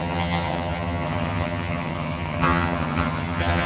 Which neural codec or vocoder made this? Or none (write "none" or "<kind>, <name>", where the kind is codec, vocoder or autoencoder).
vocoder, HiFi-GAN